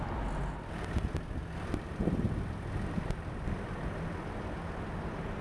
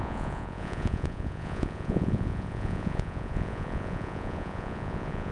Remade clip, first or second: second